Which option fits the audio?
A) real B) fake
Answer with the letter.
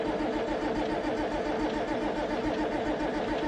A